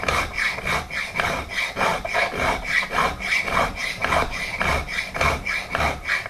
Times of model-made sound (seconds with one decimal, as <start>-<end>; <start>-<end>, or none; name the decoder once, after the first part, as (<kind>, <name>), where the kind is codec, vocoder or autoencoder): none